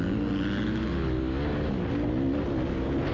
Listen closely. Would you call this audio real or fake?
real